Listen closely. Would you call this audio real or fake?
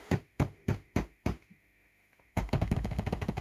fake